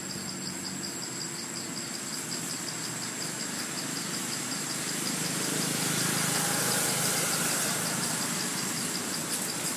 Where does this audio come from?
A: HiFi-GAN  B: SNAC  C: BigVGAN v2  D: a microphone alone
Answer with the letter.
D